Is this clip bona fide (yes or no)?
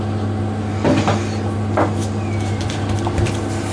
yes